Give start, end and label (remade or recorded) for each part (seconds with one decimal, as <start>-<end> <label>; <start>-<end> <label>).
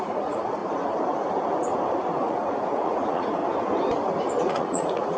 0.0-0.6 remade; 0.6-2.2 recorded; 2.2-3.4 remade; 3.4-4.5 recorded; 4.5-5.2 remade